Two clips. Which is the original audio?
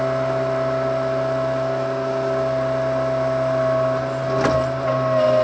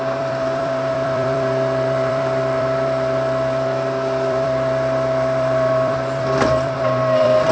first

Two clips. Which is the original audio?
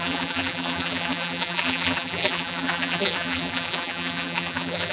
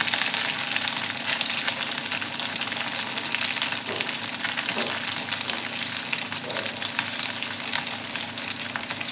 second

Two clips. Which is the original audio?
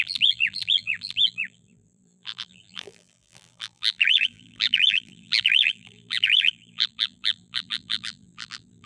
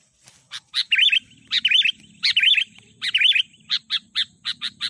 second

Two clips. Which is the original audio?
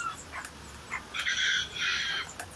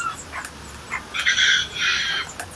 second